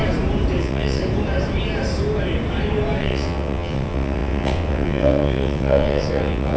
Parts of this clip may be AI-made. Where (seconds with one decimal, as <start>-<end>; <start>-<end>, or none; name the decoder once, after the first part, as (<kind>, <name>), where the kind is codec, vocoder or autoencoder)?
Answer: 0.6-1.0 (vocoder, WaveNeXt); 3.0-6.6